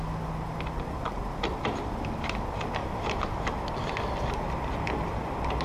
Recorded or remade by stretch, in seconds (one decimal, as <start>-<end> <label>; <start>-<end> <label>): 0.0-2.8 recorded; 2.8-3.6 remade; 3.6-5.6 recorded